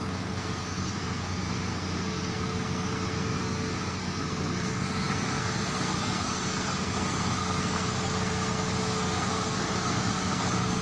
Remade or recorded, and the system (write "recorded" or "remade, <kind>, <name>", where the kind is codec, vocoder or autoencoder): remade, codec, SNAC